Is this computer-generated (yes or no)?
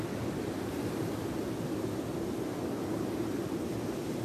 no